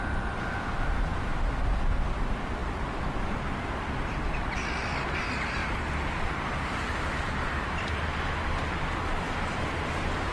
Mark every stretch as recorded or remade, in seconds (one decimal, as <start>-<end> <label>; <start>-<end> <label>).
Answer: 0.0-10.3 recorded